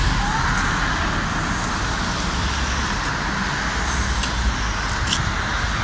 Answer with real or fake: real